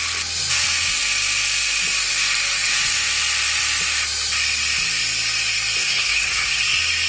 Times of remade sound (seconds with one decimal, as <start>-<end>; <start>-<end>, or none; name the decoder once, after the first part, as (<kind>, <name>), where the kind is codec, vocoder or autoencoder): 5.8-6.6 (codec, SNAC)